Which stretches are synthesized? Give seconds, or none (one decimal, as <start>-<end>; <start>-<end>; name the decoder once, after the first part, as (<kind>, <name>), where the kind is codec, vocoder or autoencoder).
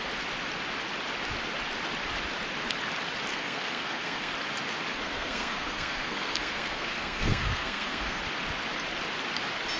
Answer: 3.3-4.3 (codec, SNAC); 4.9-8.2